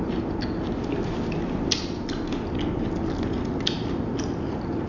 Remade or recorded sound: recorded